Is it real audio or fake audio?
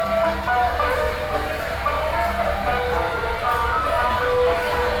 real